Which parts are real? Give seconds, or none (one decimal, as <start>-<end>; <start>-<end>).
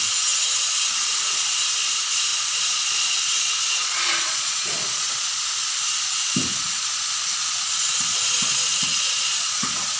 0.0-2.3; 3.2-3.8; 5.4-6.5